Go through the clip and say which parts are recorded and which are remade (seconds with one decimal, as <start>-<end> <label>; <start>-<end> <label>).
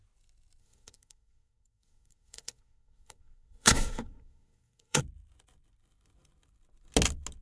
0.0-0.6 recorded; 0.6-5.0 remade; 5.0-7.4 recorded